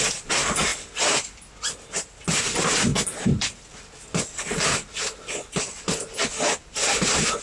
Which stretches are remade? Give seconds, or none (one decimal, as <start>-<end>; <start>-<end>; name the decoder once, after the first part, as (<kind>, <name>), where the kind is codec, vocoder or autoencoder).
none